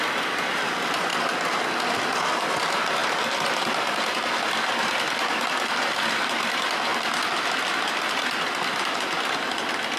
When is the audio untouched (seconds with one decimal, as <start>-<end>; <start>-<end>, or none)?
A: 1.1-2.2